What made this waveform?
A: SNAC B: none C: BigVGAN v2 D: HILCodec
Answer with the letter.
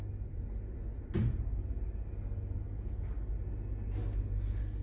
B